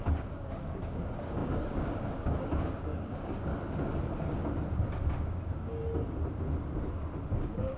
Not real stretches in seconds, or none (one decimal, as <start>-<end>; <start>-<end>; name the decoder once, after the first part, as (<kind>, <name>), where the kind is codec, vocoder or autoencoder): 0.0-3.5 (codec, DAC); 5.1-5.8; 7.3-7.8